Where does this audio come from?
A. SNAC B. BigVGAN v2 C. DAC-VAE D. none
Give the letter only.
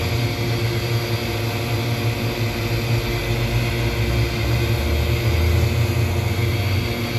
D